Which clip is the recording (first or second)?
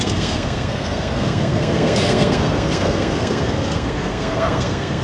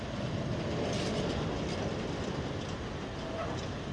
second